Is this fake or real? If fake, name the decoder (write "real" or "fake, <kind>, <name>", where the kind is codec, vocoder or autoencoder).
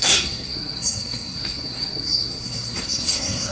fake, codec, SNAC